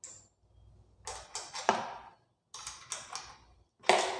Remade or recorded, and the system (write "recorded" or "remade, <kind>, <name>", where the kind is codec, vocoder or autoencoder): recorded